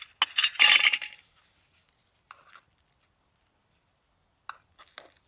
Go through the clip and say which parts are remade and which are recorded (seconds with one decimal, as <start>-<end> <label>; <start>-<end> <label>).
0.0-0.4 recorded; 0.4-1.4 remade; 1.4-5.3 recorded